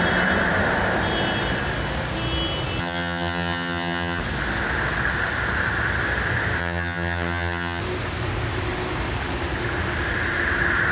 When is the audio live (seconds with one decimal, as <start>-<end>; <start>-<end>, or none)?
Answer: 0.0-2.8; 4.2-6.6; 7.8-10.9